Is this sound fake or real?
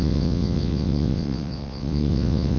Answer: fake